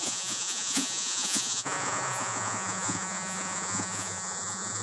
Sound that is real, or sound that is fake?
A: fake